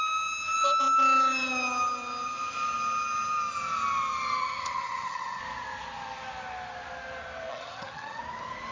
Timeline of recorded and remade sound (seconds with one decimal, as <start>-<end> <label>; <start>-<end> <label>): 0.0-4.4 recorded; 4.4-5.4 remade; 5.4-7.5 recorded; 7.5-8.2 remade; 8.2-8.7 recorded